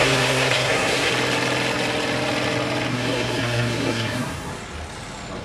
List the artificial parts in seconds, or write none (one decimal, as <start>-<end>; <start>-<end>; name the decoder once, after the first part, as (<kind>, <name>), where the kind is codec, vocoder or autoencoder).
0.0-1.1 (codec, SNAC); 2.9-4.5